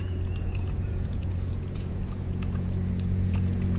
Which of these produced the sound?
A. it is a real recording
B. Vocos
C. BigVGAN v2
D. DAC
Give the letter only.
B